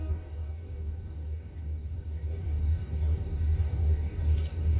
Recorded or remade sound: remade